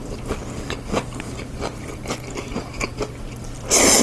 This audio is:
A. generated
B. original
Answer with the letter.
B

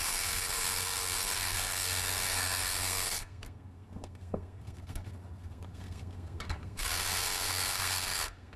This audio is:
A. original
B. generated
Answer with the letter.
B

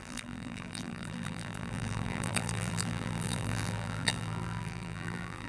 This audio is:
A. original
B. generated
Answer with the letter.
B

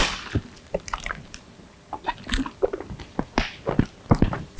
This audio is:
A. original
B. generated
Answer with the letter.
A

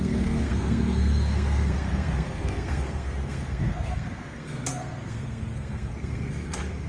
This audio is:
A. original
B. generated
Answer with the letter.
B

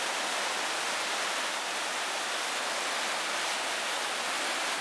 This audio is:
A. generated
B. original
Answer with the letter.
B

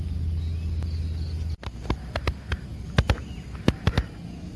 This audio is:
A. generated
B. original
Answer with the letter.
B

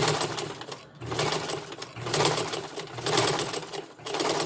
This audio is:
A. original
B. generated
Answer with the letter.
A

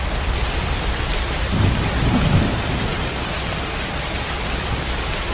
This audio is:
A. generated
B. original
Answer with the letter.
B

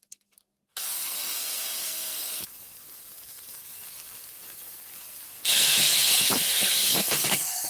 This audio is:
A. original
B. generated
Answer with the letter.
B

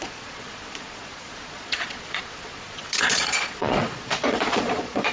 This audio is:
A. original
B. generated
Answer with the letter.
B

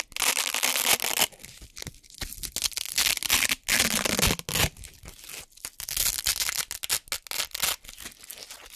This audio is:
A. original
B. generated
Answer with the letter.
A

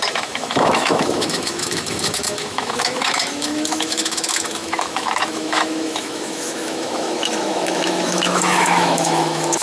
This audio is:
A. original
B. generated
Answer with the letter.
B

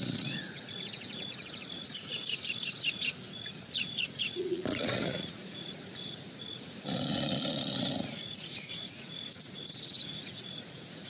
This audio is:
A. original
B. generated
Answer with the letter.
B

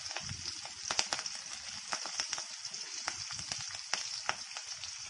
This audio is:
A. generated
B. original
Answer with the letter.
B